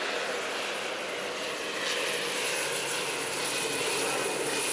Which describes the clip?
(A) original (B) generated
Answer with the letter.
A